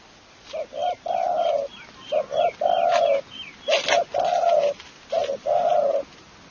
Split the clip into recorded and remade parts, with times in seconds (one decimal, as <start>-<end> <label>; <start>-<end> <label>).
0.0-6.5 recorded